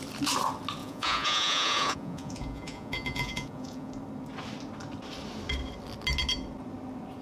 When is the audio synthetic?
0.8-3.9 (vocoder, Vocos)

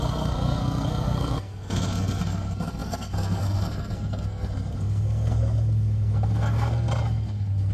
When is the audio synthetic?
0.0-7.7 (codec, SNAC)

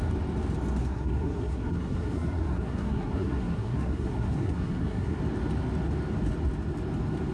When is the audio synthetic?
0.8-5.2 (codec, SNAC)

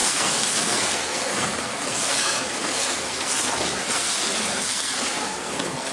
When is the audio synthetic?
0.0-5.9 (codec, SNAC)

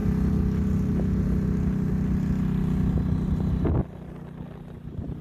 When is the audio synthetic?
none